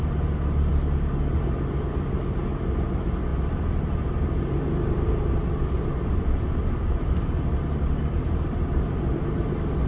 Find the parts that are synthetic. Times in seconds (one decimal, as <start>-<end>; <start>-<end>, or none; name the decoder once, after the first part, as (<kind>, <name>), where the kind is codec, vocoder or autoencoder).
none